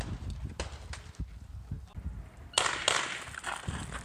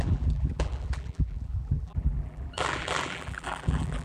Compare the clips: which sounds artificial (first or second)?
second